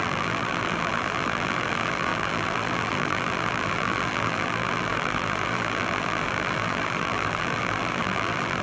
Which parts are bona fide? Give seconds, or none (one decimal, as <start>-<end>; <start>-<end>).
none